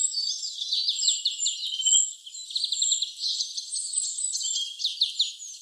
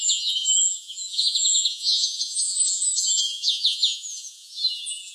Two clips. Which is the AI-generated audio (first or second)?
second